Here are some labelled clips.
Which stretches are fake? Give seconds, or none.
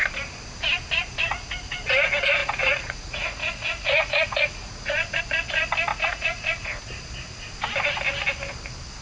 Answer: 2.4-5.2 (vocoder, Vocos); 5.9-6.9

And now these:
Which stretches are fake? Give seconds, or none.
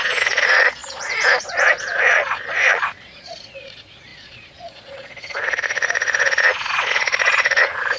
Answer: 0.0-8.0 (vocoder, Vocos)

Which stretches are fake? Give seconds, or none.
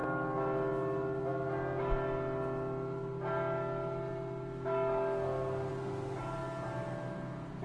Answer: none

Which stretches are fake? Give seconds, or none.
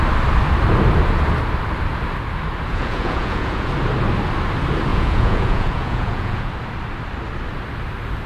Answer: 2.7-3.7 (vocoder, Vocos); 4.9-6.5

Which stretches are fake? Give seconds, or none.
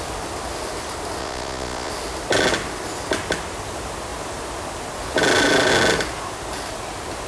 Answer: 1.2-1.9 (vocoder, Vocos)